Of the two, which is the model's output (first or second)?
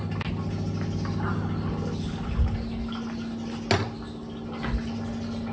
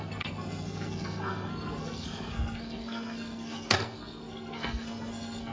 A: second